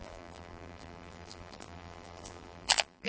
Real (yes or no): no